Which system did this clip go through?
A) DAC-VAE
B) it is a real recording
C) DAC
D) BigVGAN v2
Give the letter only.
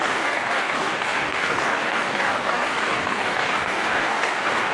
C